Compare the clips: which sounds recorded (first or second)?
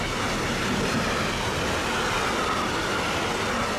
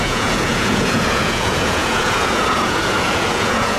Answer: first